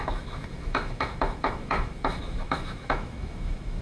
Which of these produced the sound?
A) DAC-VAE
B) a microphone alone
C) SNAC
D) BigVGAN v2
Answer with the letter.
A